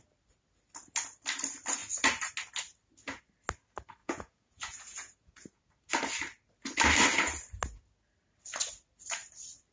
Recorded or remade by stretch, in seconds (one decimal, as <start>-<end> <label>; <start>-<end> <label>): 0.0-4.0 recorded; 4.0-5.6 remade; 5.6-9.7 recorded

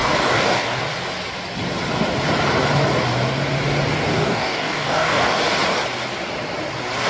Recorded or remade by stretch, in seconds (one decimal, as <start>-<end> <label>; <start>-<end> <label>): 0.0-0.8 remade; 0.8-4.1 recorded; 4.1-5.4 remade; 5.4-7.1 recorded